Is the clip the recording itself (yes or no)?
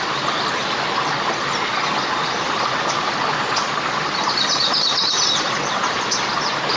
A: yes